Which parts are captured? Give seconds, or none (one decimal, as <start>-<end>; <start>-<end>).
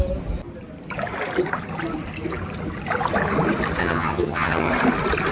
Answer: 0.0-3.8; 4.7-5.3